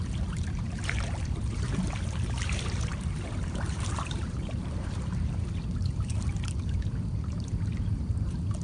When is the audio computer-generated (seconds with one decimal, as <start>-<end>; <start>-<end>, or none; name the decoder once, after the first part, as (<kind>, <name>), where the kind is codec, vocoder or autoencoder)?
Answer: 0.0-8.6 (vocoder, BigVGAN v2)